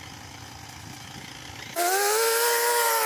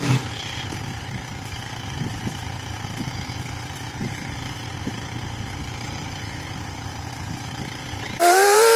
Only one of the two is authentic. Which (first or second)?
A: first